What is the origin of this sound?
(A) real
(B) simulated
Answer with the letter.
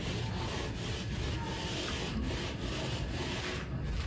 A